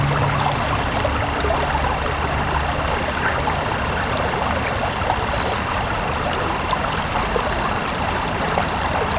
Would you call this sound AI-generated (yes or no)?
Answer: no